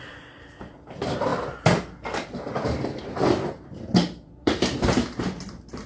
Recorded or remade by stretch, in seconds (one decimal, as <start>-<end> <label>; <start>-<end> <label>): 0.0-1.3 remade; 1.3-3.0 recorded; 3.0-5.9 remade